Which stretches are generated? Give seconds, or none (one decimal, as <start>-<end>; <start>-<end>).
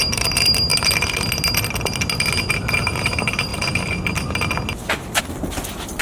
0.0-0.7; 2.7-3.5; 5.2-6.0